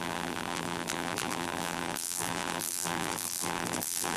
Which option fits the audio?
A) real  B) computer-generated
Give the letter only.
B